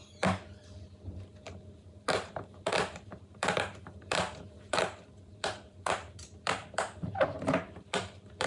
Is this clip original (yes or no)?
no